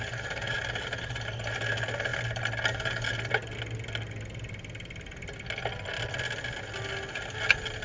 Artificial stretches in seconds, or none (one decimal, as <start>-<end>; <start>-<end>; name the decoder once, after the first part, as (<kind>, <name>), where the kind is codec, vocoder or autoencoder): none